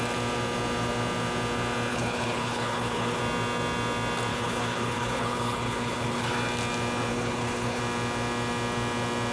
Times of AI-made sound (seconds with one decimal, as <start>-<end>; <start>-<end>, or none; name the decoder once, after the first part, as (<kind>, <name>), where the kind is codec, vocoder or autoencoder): 1.9-3.2 (codec, HILCodec); 4.3-6.3; 7.1-7.8